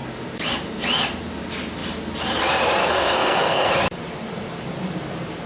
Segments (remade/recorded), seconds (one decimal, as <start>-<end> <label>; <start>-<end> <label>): 0.0-2.8 recorded; 2.8-3.7 remade; 3.7-5.5 recorded